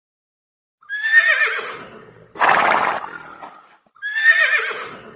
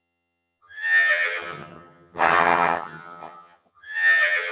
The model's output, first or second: second